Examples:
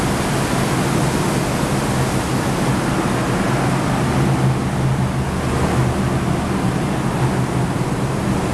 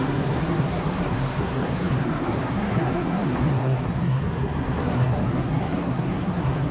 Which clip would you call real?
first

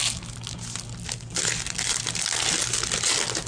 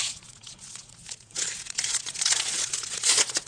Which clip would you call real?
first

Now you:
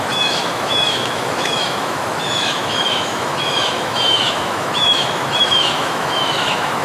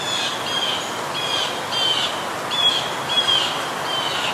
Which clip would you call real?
second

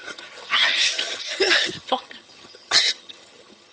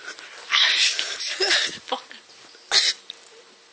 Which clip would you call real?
second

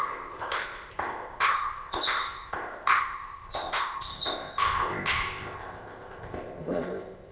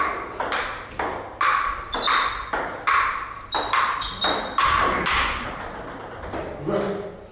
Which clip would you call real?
second